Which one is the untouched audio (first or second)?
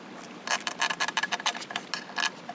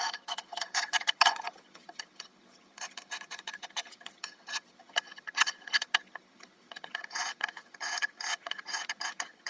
first